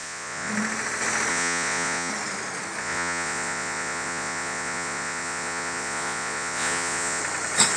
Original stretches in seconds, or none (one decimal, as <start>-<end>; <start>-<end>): 0.5-1.3; 2.1-2.8; 7.2-7.8